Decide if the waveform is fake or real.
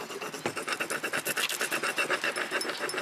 real